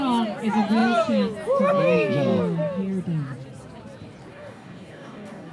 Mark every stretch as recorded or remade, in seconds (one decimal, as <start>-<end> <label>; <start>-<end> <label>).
0.0-4.3 recorded; 4.3-5.5 remade